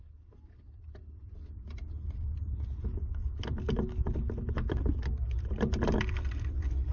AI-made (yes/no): no